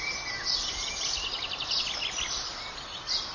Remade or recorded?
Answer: recorded